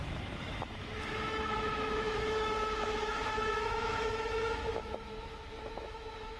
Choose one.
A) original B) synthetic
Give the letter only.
B